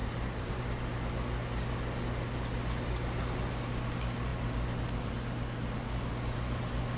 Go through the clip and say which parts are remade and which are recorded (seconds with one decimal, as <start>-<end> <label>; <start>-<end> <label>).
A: 0.0-0.6 remade; 0.6-7.0 recorded